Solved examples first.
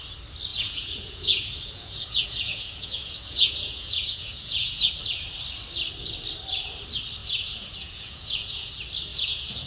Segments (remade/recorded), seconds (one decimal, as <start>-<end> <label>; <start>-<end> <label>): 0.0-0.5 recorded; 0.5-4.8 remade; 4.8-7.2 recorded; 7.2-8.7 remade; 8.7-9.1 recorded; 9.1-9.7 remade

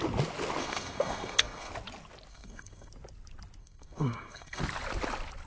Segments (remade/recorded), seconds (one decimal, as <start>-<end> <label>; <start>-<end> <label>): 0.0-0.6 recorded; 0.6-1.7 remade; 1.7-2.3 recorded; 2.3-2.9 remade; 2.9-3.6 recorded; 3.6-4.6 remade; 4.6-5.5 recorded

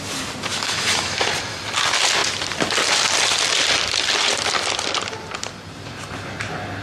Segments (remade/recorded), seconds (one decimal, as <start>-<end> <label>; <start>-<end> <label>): 0.0-0.5 recorded; 0.5-1.3 remade; 1.3-6.8 recorded

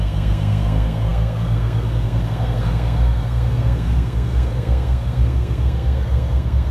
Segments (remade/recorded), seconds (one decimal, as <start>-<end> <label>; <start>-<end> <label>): 0.0-6.7 remade

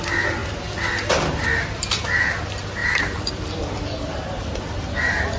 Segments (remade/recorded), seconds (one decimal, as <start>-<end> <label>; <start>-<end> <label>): 0.0-2.8 recorded; 2.8-3.4 remade; 3.4-5.4 recorded

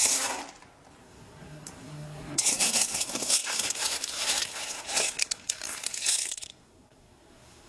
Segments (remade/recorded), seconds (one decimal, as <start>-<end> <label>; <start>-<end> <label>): 0.0-0.4 remade; 0.4-1.0 recorded; 1.0-7.7 remade